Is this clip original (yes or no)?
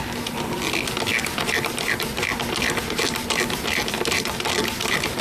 yes